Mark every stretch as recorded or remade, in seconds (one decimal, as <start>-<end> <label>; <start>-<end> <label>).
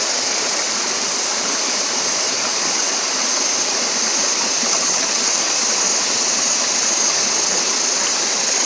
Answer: 0.0-4.7 recorded; 4.7-5.3 remade; 5.3-8.7 recorded